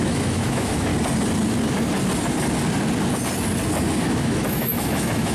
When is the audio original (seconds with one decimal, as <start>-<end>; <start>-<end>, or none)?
0.9-4.1